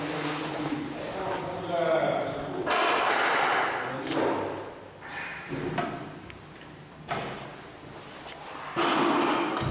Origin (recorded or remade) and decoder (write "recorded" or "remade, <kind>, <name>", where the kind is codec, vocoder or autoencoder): recorded